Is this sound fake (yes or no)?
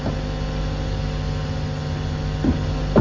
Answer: no